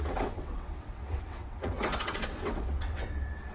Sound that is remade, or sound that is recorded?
remade